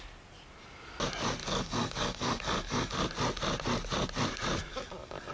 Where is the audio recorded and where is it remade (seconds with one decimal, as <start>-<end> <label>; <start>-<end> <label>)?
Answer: 0.0-1.4 recorded; 1.4-2.9 remade; 2.9-4.7 recorded; 4.7-5.3 remade